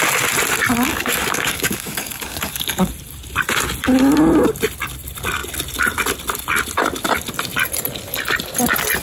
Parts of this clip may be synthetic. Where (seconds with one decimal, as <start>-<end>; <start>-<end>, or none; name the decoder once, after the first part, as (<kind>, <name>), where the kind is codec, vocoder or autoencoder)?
0.9-2.9 (codec, DAC)